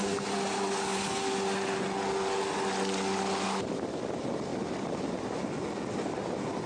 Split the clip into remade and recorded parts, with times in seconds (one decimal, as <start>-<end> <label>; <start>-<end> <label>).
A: 0.0-6.7 recorded